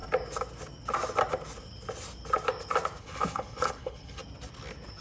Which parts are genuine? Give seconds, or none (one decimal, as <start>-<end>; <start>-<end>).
0.0-3.0; 4.2-5.0